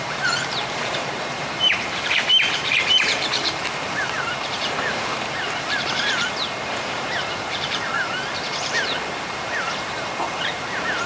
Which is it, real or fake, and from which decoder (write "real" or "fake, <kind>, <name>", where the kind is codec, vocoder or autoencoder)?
fake, vocoder, BigVGAN v2